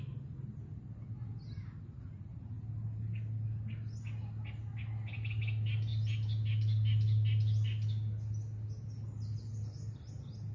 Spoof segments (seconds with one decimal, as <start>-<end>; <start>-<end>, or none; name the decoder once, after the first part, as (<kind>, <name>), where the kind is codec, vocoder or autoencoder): none